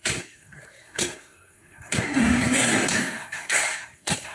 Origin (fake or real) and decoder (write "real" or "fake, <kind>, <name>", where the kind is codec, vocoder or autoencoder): fake, codec, SNAC